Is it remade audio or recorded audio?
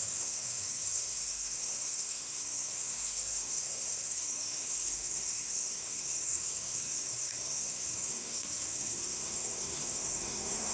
remade